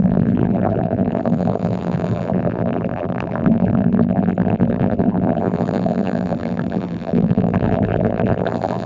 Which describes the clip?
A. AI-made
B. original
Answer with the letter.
A